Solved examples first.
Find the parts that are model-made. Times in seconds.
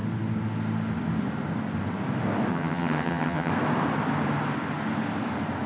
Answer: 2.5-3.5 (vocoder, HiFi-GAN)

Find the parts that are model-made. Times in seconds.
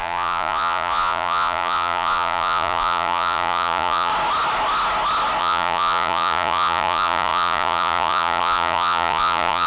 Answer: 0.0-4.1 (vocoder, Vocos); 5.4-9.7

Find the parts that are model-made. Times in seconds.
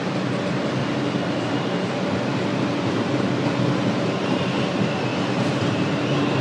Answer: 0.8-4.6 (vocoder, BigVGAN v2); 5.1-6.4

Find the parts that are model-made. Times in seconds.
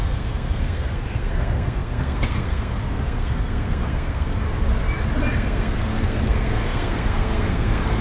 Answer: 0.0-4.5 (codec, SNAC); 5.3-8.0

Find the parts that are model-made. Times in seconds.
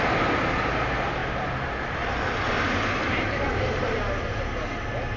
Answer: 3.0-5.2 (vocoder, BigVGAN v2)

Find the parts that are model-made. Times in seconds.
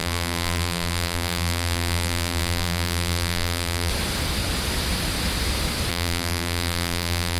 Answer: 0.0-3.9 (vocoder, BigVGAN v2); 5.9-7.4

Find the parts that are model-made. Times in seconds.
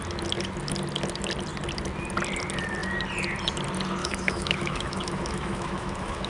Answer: 4.0-6.3 (autoencoder, DAC-VAE)